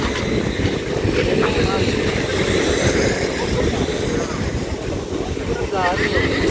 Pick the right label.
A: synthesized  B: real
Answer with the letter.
B